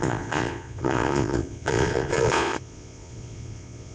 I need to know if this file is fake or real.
fake